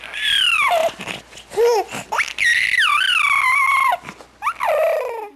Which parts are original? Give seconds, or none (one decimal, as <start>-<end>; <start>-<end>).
0.0-5.4